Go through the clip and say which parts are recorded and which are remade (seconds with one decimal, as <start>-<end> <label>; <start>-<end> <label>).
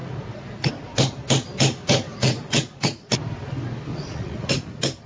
0.0-0.7 remade; 0.7-2.1 recorded; 2.1-3.1 remade; 3.1-3.9 recorded; 3.9-4.5 remade; 4.5-5.1 recorded